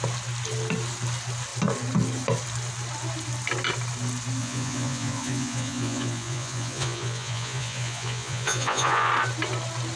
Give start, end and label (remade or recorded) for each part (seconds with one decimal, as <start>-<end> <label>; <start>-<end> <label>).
0.0-4.4 recorded; 4.4-9.1 remade; 9.1-10.0 recorded